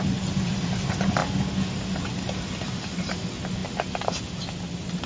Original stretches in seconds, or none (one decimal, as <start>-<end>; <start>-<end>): 0.0-5.1